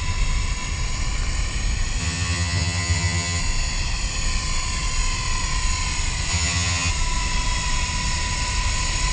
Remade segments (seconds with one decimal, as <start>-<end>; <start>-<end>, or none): 2.0-3.4; 6.3-6.9